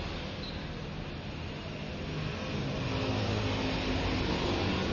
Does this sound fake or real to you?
real